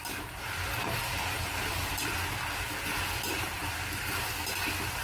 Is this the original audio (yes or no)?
yes